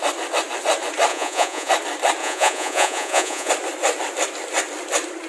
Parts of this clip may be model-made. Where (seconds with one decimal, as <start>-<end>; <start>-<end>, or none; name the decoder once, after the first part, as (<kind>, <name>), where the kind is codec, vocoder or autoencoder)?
1.1-1.7 (vocoder, Vocos); 2.2-3.5